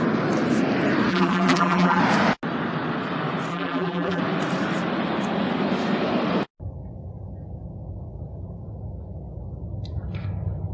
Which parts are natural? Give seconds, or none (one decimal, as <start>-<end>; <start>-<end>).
0.0-1.1; 2.0-3.5; 4.2-10.7